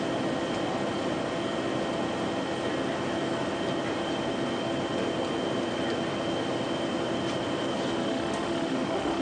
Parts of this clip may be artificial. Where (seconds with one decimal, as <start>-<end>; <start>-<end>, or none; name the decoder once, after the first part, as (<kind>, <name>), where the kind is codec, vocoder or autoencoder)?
8.0-9.2 (autoencoder, DAC-VAE)